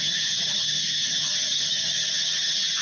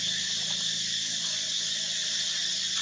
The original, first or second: second